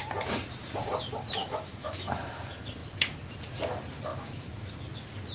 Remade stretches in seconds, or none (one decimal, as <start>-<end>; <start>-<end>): 1.4-2.4; 4.1-4.8